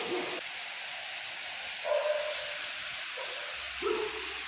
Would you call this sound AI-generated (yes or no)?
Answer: no